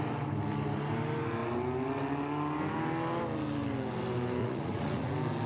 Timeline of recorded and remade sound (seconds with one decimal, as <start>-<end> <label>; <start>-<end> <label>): 0.0-4.4 recorded; 4.4-5.1 remade; 5.1-5.5 recorded